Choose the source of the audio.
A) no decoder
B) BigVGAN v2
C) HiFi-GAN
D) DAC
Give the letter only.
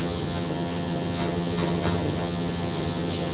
C